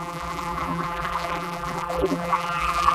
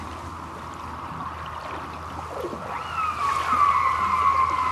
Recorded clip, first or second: second